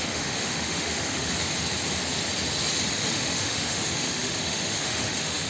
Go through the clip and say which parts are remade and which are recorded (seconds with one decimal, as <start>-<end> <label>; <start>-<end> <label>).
0.0-1.3 remade; 1.3-3.1 recorded; 3.1-5.5 remade